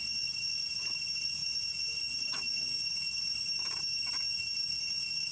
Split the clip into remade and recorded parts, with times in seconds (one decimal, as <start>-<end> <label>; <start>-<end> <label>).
0.0-5.3 recorded